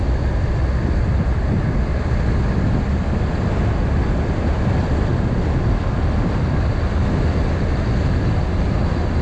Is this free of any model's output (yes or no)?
no